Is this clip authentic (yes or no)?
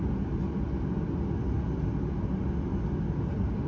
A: yes